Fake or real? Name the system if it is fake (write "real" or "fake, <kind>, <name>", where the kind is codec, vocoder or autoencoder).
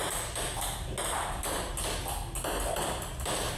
real